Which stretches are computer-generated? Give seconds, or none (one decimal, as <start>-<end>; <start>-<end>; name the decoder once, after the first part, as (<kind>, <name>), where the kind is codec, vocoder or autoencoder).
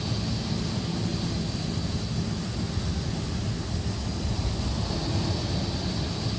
none